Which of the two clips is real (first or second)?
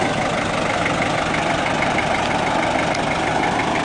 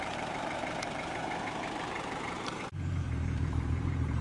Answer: first